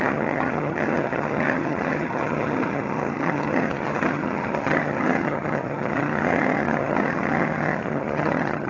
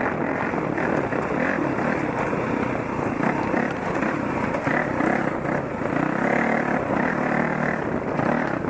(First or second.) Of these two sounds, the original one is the second